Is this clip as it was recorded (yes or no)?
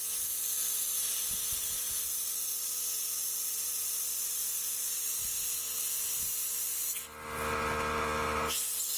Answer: yes